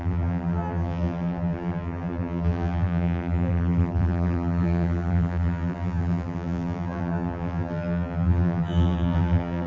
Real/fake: fake